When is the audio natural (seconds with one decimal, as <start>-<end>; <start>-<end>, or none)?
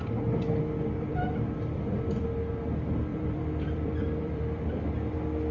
0.0-3.1; 4.8-5.5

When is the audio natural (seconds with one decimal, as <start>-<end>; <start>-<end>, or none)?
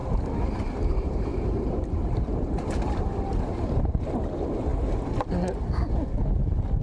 0.0-0.9; 4.7-6.8